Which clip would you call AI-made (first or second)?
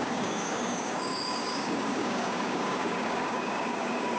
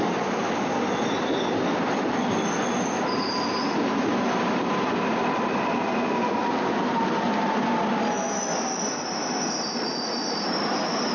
first